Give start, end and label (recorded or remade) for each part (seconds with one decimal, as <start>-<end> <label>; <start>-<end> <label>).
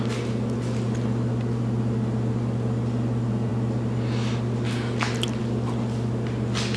0.0-6.8 recorded